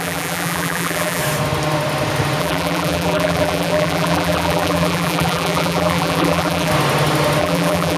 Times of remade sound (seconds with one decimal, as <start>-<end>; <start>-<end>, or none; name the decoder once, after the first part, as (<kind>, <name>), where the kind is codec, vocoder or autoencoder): 0.0-1.2 (vocoder, BigVGAN v2); 2.4-6.7; 7.4-8.0